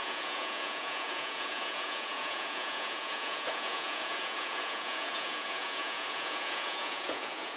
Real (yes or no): no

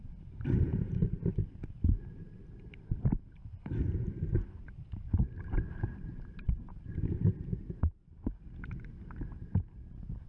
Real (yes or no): yes